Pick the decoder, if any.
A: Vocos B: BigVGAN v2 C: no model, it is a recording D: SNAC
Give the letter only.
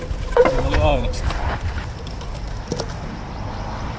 B